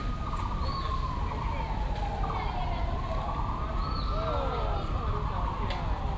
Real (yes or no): yes